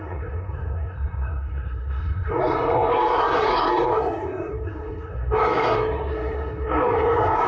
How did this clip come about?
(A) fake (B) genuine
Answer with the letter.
A